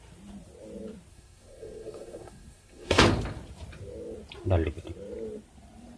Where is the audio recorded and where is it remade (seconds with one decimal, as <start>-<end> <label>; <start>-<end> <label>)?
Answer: 0.0-1.1 recorded; 1.1-3.0 remade; 3.0-6.0 recorded